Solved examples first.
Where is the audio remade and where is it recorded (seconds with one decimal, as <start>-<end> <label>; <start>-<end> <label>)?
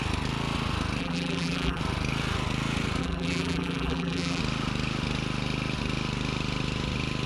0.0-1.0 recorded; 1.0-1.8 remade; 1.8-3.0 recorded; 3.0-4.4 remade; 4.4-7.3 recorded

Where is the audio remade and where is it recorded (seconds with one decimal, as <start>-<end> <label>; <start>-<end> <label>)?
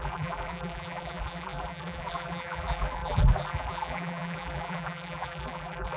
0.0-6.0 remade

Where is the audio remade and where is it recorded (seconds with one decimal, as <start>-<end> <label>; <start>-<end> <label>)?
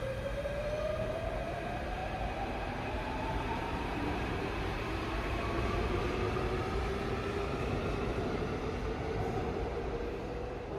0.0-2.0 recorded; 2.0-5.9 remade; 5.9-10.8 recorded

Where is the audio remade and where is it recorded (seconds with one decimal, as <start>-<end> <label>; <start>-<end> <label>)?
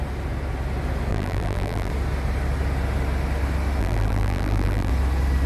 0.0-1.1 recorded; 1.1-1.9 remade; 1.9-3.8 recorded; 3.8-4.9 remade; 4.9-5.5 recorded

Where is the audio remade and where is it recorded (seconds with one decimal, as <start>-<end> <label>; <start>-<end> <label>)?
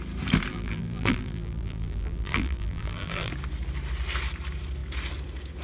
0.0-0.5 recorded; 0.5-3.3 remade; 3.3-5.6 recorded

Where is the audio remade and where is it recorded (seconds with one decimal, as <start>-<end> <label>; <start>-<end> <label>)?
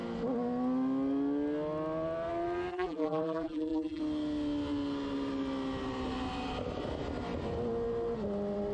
0.0-2.7 recorded; 2.7-4.0 remade; 4.0-8.7 recorded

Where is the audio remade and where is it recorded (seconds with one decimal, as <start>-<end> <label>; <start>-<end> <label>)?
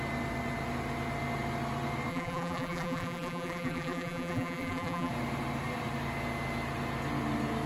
0.0-2.1 recorded; 2.1-5.1 remade; 5.1-7.7 recorded